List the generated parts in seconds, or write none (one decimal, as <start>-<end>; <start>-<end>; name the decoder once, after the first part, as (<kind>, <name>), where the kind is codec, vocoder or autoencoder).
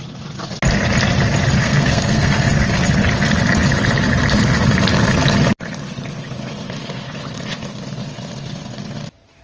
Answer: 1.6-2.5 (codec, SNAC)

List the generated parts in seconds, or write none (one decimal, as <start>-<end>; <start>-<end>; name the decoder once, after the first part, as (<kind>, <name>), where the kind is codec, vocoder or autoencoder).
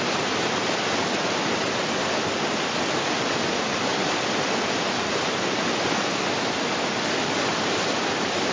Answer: none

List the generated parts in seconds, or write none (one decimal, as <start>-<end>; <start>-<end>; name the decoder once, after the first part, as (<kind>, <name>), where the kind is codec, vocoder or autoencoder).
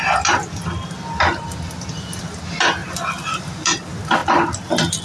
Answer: none